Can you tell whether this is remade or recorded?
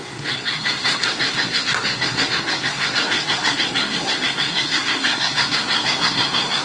remade